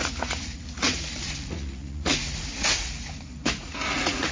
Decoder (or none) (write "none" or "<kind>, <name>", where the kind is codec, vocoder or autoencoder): vocoder, Vocos